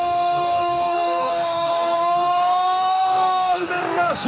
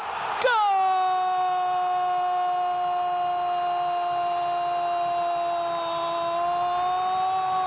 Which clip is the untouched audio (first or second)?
second